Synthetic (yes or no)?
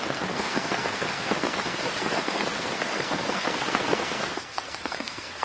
yes